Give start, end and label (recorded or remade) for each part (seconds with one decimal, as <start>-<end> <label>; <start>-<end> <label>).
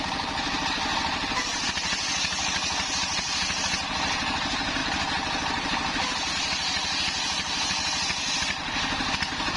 0.0-9.6 recorded